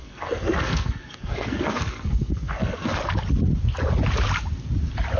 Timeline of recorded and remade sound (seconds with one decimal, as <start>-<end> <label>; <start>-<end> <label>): 0.0-3.0 remade; 3.0-5.2 recorded